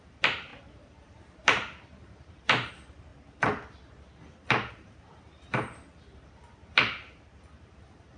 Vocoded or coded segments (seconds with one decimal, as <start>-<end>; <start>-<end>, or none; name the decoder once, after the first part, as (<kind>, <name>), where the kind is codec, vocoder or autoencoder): 0.0-3.1 (vocoder, BigVGAN v2); 4.7-8.2